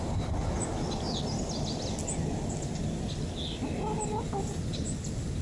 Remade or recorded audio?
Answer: recorded